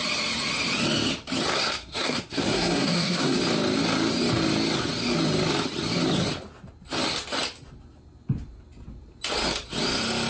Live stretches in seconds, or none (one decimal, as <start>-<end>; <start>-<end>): 0.0-1.5; 3.4-10.3